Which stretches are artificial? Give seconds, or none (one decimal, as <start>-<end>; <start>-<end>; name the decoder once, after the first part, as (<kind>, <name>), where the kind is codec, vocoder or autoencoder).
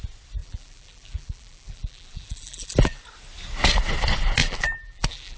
0.4-3.0 (vocoder, BigVGAN v2); 4.4-5.4